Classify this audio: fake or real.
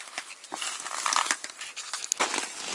real